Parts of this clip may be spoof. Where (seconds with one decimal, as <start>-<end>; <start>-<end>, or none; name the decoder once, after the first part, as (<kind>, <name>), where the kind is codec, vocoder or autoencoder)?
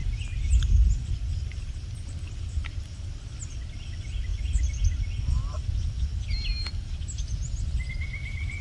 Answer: none